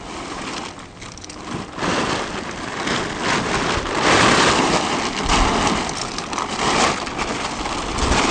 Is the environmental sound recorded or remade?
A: recorded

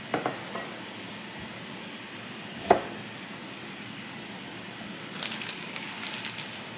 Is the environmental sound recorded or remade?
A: recorded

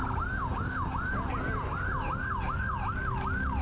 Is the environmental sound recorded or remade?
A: recorded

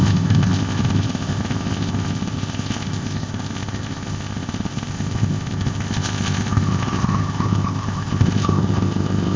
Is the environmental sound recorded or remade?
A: remade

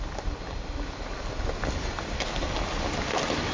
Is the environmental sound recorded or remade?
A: recorded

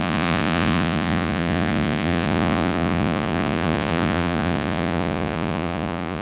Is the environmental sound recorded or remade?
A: remade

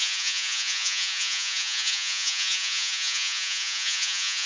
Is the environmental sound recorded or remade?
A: remade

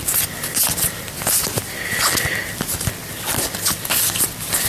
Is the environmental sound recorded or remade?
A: recorded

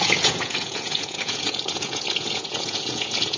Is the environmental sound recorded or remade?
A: remade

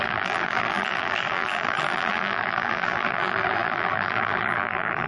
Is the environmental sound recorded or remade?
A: remade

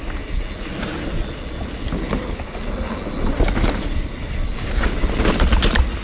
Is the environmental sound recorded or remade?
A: recorded